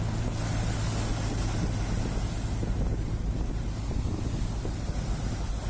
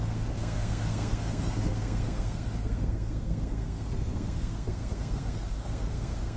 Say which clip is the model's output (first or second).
second